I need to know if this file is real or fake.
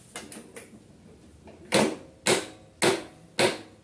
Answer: real